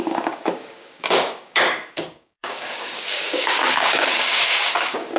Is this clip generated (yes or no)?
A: yes